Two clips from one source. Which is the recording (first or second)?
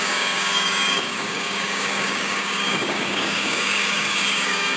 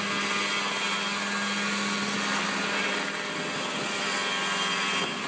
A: second